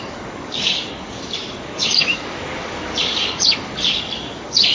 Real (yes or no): no